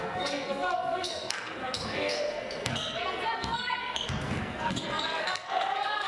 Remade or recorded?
remade